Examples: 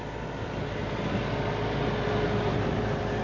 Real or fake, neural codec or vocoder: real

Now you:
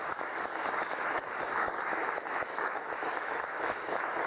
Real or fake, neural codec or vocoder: fake, autoencoder, DAC-VAE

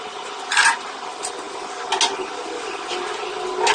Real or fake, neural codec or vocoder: real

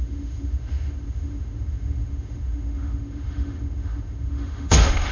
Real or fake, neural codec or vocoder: fake, autoencoder, DAC-VAE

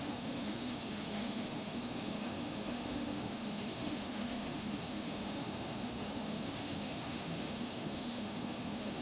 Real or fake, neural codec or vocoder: fake, autoencoder, DAC-VAE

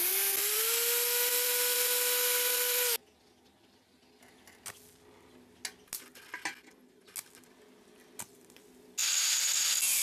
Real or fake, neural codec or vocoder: real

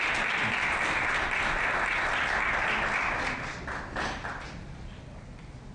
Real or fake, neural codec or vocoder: real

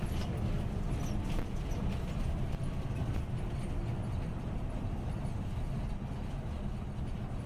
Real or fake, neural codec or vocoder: real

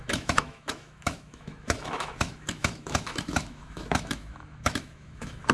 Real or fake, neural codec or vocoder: fake, autoencoder, DAC-VAE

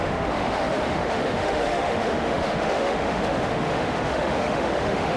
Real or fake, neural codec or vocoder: fake, autoencoder, DAC-VAE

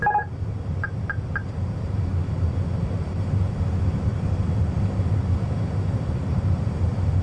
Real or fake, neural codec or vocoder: real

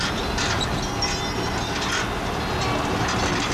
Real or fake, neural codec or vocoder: real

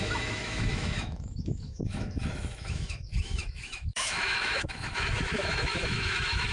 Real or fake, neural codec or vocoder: fake, autoencoder, DAC-VAE